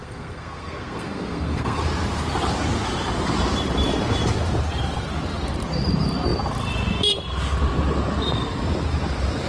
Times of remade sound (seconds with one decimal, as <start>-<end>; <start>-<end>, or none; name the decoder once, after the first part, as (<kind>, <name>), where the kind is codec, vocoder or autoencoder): 0.0-1.8 (codec, SNAC)